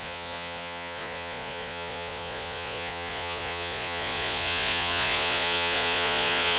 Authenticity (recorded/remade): remade